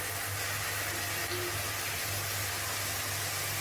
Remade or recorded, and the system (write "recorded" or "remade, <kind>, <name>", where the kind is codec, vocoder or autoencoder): recorded